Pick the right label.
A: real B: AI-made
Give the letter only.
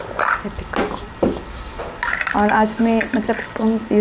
A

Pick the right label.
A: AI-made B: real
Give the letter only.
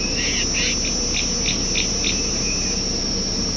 B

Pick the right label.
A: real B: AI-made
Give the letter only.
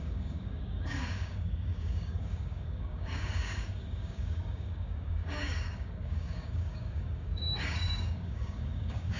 B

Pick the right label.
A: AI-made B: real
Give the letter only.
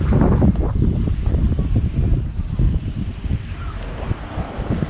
A